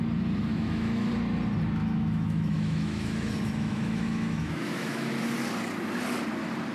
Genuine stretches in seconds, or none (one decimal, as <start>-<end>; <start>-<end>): 0.0-0.5; 1.1-1.8; 5.1-6.7